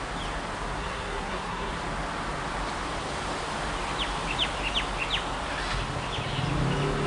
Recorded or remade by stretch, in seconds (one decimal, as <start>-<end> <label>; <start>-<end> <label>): 0.0-0.8 recorded; 0.8-1.7 remade; 1.7-7.1 recorded